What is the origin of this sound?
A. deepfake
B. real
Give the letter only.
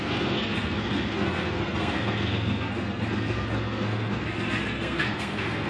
A